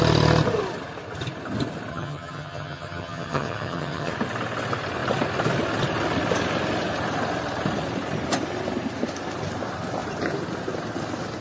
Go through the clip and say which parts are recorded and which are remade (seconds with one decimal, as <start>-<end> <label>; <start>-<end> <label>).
0.0-1.9 recorded; 1.9-4.1 remade; 4.1-11.4 recorded